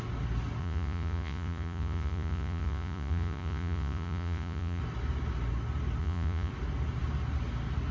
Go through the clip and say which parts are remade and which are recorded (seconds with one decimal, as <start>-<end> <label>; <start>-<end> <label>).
0.0-0.6 recorded; 0.6-4.8 remade; 4.8-6.0 recorded; 6.0-6.5 remade; 6.5-7.9 recorded